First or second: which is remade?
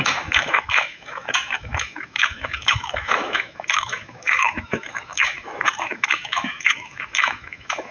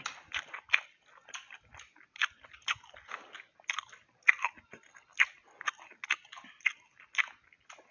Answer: first